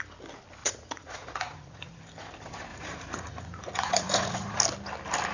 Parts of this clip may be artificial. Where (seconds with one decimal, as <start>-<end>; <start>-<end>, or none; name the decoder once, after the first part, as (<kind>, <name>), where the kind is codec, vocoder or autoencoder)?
0.6-2.0 (vocoder, Vocos); 2.7-4.6